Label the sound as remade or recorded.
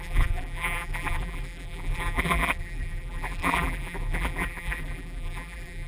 remade